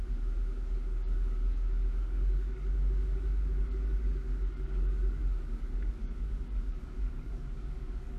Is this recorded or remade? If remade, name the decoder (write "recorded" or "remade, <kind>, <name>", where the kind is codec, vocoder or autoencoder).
remade, codec, DAC